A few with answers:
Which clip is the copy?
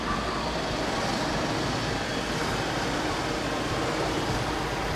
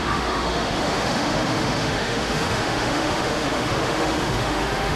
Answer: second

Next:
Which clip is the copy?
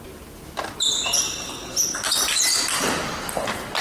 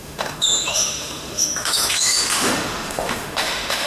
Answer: second